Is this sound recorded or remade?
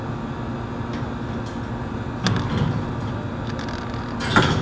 recorded